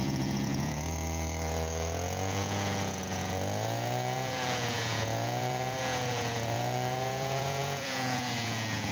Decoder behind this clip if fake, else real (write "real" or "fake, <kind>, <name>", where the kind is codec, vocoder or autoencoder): fake, vocoder, Vocos